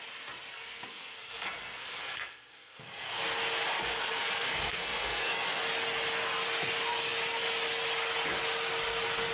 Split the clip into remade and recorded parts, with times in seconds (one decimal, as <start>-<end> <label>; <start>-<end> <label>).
0.0-0.5 recorded; 0.5-3.2 remade; 3.2-3.8 recorded; 3.8-5.6 remade; 5.6-9.3 recorded